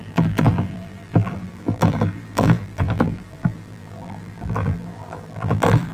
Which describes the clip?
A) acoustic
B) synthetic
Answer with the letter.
B